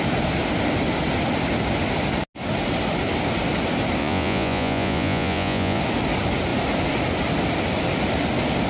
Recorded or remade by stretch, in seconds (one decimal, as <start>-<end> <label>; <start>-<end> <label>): 0.0-4.0 recorded; 4.0-5.8 remade; 5.8-8.7 recorded